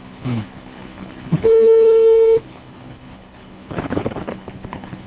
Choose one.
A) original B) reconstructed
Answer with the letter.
B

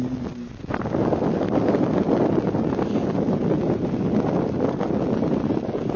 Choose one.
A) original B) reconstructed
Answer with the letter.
A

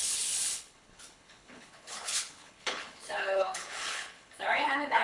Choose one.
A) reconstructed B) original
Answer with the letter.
A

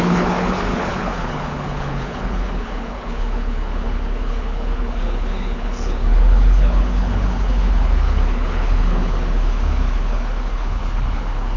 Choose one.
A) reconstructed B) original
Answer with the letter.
A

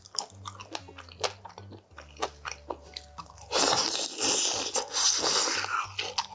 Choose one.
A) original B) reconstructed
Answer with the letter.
A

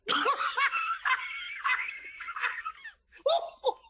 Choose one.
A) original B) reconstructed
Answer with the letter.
A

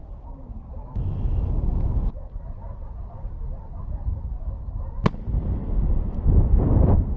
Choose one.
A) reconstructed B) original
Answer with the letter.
B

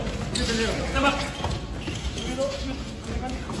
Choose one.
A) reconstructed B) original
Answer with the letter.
B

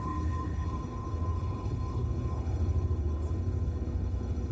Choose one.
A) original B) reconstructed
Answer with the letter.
B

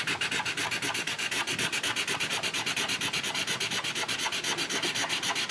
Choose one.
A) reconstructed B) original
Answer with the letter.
B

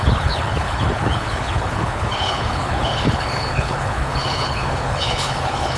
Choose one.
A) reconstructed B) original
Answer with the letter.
A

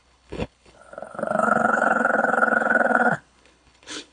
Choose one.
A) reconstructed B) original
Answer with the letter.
A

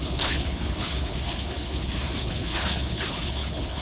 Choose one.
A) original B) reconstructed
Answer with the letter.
B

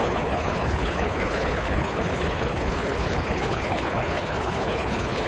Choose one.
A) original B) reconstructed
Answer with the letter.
B